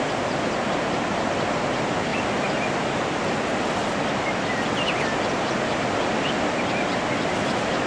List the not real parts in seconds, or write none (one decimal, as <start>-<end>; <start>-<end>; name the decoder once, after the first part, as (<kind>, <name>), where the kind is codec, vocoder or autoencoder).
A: none